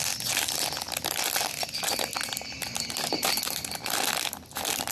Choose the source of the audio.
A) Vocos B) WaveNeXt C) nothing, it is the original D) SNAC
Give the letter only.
C